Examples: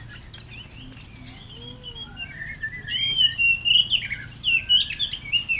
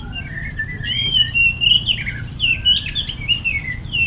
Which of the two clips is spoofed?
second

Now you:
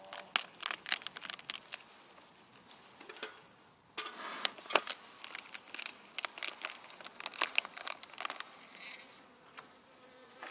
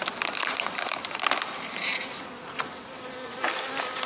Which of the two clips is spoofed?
second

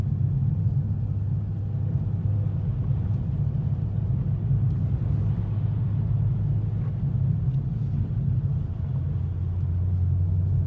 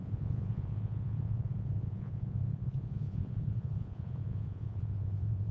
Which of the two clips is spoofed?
second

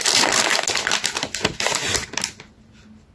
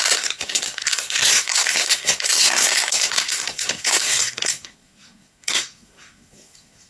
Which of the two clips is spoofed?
second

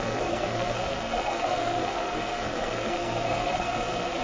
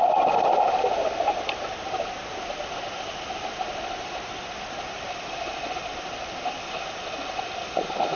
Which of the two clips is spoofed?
first